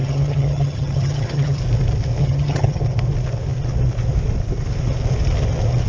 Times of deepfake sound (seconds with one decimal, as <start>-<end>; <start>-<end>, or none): 0.0-1.6; 2.2-2.8